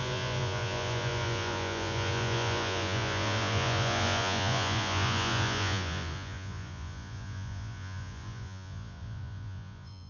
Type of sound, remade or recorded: remade